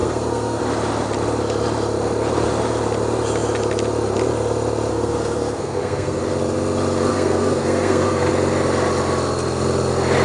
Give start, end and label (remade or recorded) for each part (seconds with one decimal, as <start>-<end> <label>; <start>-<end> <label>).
0.0-0.6 remade; 0.6-4.9 recorded; 4.9-6.2 remade; 6.2-7.1 recorded; 7.1-8.3 remade; 8.3-10.2 recorded